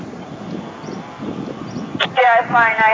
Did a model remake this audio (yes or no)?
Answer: no